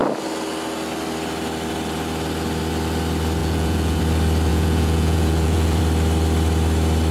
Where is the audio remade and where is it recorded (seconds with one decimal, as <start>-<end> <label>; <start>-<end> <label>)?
0.0-3.4 recorded; 3.4-4.0 remade; 4.0-4.5 recorded; 4.5-5.8 remade; 5.8-7.1 recorded